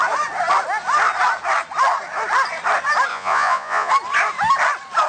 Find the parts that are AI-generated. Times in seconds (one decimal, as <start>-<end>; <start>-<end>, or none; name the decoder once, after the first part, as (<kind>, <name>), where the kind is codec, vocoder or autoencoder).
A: 3.1-3.9 (vocoder, Vocos)